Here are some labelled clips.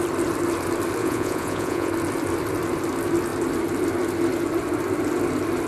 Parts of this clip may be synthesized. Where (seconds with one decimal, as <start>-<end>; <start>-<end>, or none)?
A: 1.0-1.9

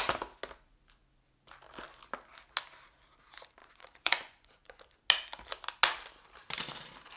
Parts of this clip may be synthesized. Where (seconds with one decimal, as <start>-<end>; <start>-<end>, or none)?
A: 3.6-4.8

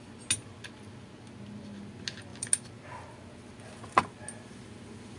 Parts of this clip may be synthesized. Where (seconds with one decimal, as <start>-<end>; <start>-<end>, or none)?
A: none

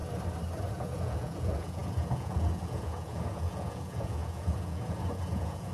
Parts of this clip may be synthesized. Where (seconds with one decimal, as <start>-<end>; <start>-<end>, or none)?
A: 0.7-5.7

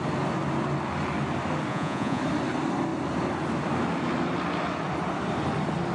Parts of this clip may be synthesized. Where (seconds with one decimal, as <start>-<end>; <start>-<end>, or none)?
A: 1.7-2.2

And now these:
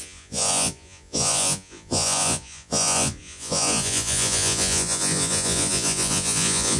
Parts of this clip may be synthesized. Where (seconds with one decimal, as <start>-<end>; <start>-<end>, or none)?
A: 0.0-6.8